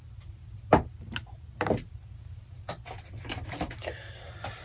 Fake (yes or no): no